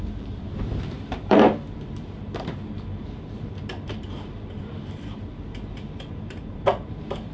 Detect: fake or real fake